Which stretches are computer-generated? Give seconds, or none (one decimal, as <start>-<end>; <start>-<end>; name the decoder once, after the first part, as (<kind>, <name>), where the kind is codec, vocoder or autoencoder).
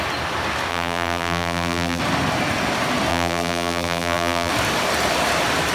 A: 0.7-2.0 (vocoder, BigVGAN v2); 3.1-4.5